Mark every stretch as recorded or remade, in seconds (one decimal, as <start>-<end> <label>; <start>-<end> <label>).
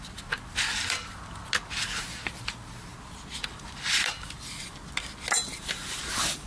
0.0-6.5 recorded